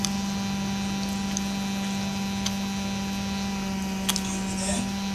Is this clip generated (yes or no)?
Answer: no